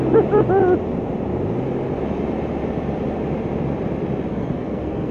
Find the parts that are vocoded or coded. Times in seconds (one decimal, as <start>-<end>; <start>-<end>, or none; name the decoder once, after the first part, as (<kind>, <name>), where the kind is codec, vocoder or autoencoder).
4.3-5.1 (codec, SNAC)